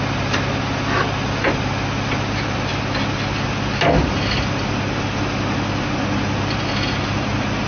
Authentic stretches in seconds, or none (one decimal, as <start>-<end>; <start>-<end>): 0.0-7.7